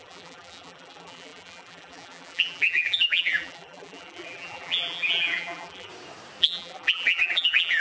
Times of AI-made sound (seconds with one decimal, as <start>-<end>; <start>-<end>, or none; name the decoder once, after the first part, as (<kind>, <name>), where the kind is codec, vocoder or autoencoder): 0.0-5.9 (vocoder, BigVGAN v2); 6.4-7.8